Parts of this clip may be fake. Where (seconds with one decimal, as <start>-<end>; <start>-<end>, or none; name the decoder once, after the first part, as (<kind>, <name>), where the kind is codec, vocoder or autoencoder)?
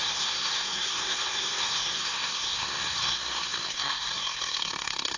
0.0-5.2 (codec, SNAC)